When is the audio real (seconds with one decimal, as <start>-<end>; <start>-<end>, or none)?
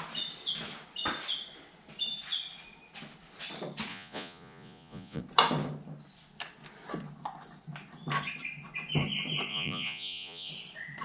0.0-3.9; 5.2-9.5; 10.5-11.0